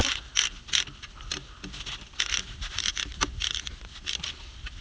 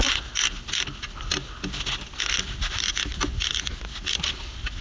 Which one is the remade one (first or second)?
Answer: first